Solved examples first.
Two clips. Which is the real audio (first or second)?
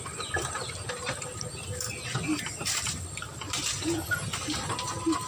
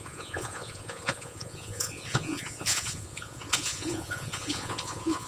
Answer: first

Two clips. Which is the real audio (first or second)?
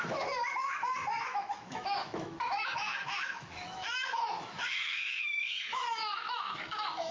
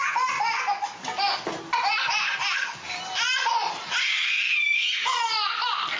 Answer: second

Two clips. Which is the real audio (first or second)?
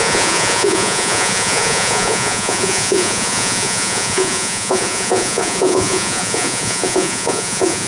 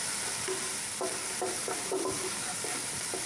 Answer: second